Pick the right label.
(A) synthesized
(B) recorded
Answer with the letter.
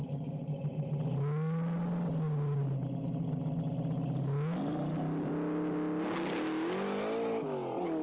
B